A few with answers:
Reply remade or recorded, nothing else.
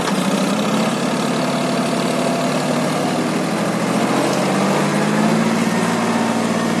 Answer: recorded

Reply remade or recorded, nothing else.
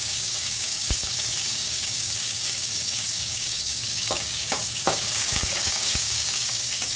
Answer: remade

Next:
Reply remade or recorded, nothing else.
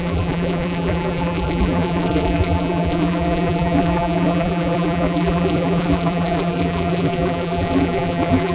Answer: remade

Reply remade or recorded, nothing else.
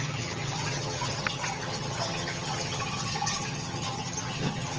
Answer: remade